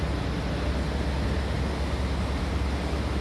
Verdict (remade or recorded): recorded